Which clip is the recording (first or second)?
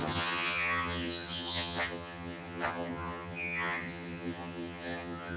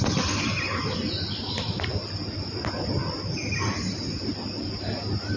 second